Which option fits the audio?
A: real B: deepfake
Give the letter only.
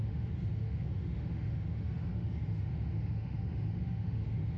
B